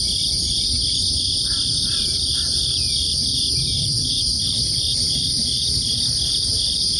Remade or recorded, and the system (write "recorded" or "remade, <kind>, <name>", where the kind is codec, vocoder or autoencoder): remade, vocoder, BigVGAN v2